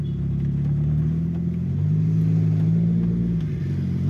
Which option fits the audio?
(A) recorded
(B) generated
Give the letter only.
A